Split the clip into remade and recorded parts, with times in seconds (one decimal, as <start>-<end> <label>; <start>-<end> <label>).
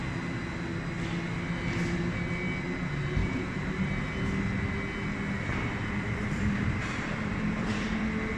0.0-3.2 recorded; 3.2-3.9 remade; 3.9-5.5 recorded; 5.5-8.0 remade; 8.0-8.4 recorded